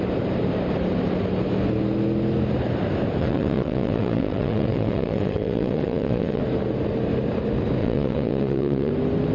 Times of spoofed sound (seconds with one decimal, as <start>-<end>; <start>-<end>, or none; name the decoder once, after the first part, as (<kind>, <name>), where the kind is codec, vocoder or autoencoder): 3.2-6.4 (vocoder, WaveNeXt); 7.8-8.9